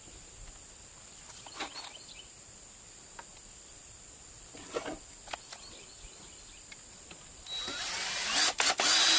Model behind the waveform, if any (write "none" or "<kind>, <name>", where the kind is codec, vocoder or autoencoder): none